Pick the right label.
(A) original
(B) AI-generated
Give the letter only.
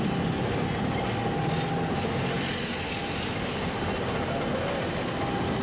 A